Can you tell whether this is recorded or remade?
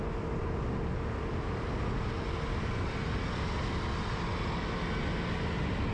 recorded